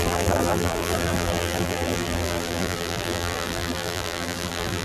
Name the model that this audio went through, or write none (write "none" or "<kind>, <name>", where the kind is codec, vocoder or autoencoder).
vocoder, BigVGAN v2